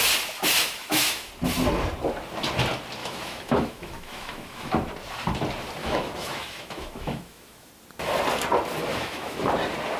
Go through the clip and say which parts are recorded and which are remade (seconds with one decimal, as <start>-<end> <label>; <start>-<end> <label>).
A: 0.0-0.6 recorded; 0.6-1.3 remade; 1.3-3.0 recorded; 3.0-4.7 remade; 4.7-5.8 recorded; 5.8-7.7 remade; 7.7-8.9 recorded; 8.9-9.5 remade; 9.5-10.0 recorded